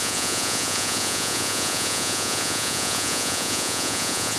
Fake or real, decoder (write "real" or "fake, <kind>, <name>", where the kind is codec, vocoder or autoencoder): fake, vocoder, Vocos